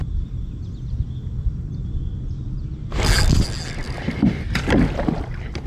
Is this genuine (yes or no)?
yes